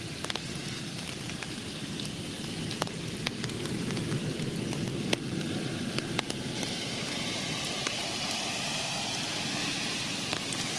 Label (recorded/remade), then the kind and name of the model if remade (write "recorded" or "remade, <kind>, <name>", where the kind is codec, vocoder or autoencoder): recorded